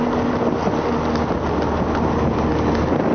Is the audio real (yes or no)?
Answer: yes